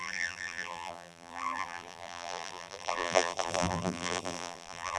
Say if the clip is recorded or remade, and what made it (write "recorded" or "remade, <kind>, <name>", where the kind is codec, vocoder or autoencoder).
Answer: remade, vocoder, BigVGAN v2